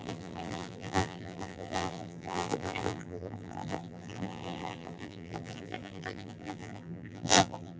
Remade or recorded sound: remade